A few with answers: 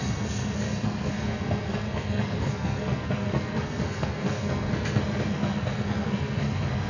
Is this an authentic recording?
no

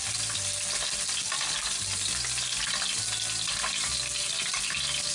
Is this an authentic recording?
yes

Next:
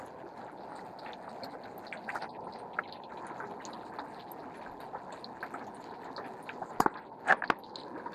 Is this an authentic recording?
yes